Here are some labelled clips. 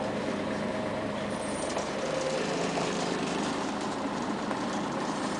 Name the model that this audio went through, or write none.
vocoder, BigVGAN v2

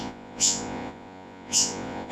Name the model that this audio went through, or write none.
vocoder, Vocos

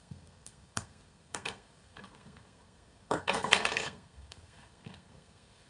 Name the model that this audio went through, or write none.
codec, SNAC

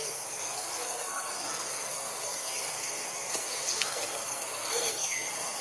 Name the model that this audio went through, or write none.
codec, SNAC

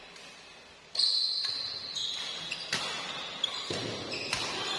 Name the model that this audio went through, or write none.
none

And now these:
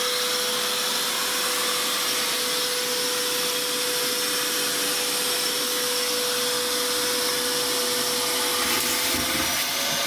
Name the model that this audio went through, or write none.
none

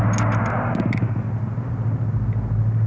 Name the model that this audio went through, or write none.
none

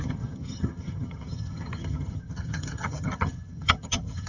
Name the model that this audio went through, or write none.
vocoder, HiFi-GAN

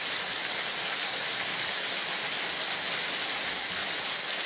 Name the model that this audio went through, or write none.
none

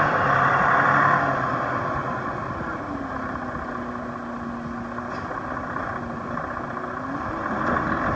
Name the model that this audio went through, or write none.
none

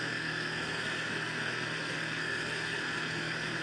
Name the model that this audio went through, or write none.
codec, SNAC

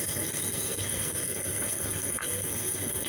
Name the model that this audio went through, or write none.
codec, SNAC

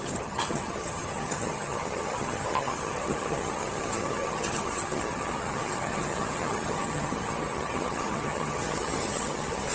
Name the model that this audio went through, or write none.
vocoder, HiFi-GAN